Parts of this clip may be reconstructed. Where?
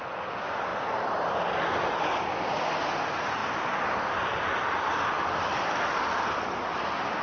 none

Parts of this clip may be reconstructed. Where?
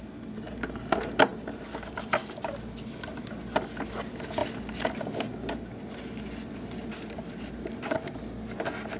none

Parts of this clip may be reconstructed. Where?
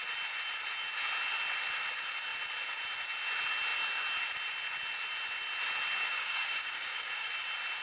6.0-7.3 (codec, DAC)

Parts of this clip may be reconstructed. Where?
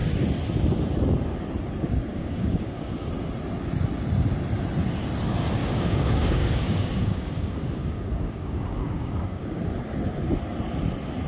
2.1-3.1 (codec, DAC); 5.6-9.7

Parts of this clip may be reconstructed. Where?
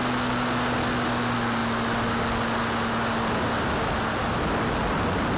none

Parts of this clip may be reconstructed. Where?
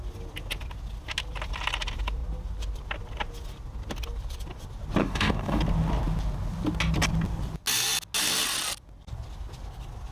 5.0-5.6 (codec, DAC)